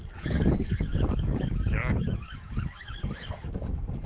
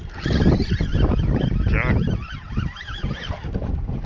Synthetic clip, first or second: first